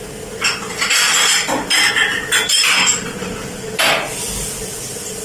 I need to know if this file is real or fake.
real